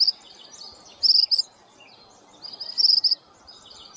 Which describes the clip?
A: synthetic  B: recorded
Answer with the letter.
B